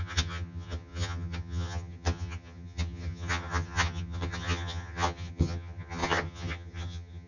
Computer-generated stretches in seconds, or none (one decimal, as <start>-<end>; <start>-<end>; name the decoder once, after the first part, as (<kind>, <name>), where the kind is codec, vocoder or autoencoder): 0.0-7.3 (vocoder, HiFi-GAN)